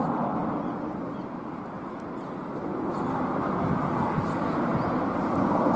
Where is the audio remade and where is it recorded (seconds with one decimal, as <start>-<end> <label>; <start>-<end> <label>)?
0.0-5.8 recorded